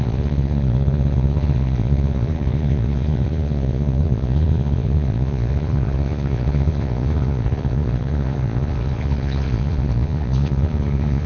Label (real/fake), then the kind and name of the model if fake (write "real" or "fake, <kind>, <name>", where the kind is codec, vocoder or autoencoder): fake, vocoder, Vocos